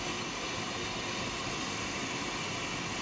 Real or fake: real